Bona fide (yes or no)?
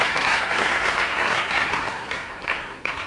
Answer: no